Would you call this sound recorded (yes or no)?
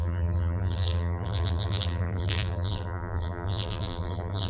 no